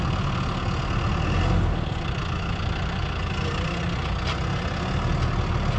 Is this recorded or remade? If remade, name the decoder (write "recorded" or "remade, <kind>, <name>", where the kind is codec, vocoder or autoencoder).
recorded